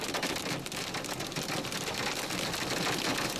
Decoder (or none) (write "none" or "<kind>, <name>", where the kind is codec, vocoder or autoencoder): none